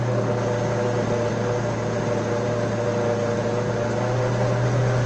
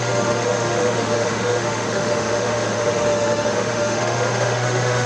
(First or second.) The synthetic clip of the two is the second